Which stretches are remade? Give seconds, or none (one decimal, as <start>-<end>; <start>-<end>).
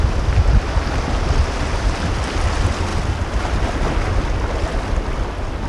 none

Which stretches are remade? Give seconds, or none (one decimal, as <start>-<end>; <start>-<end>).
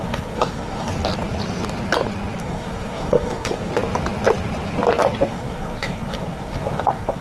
0.0-0.9; 2.4-3.7; 5.3-7.2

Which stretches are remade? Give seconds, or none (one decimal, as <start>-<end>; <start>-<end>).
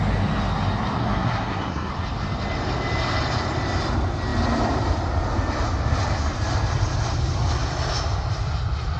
1.0-1.9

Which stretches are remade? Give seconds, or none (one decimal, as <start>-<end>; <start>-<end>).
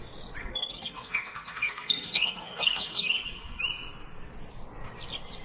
0.4-3.6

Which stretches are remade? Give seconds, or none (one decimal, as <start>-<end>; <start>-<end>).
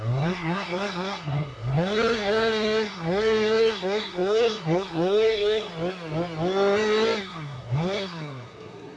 0.0-5.7; 7.2-9.0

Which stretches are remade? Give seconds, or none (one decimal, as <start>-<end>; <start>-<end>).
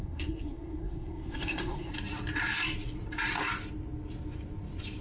0.0-1.9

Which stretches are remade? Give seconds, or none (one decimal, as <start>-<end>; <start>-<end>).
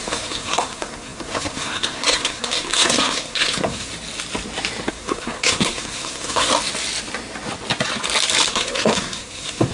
0.0-3.9; 4.9-6.5; 8.5-9.7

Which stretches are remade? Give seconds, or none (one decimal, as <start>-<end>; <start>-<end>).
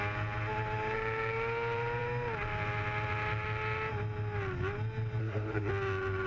5.2-5.7